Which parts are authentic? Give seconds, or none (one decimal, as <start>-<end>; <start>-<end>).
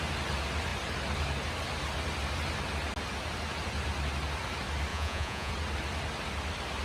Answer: 0.0-4.9; 5.5-6.8